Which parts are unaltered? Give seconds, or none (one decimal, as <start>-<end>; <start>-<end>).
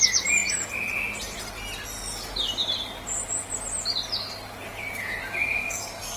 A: 0.0-5.6